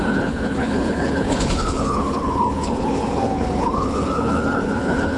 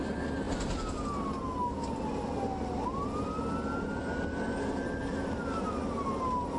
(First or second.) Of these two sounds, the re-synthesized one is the first